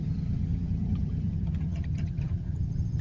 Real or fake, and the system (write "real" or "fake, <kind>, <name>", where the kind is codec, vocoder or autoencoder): fake, vocoder, HiFi-GAN